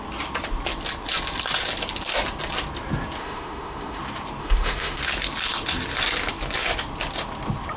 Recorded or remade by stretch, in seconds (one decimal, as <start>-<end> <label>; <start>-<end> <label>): 0.0-3.2 recorded; 3.2-4.0 remade; 4.0-4.4 recorded; 4.4-5.0 remade; 5.0-7.8 recorded